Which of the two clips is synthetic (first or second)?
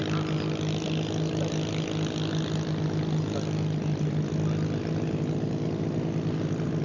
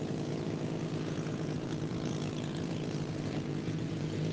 second